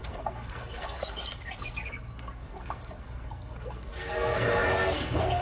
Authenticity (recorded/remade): remade